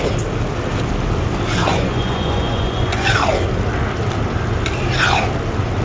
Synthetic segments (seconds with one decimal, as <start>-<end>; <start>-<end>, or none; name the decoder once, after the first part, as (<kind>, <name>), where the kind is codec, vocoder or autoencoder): 1.7-3.1 (vocoder, Vocos)